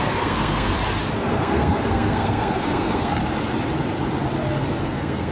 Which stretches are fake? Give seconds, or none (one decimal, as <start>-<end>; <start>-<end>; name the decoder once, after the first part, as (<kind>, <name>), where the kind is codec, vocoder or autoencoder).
0.0-0.7 (codec, SNAC); 1.3-3.2; 4.8-5.3